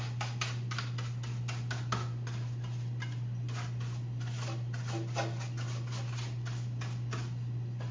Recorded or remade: recorded